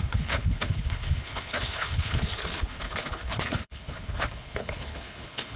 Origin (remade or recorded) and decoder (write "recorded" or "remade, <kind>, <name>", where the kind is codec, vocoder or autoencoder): remade, codec, HILCodec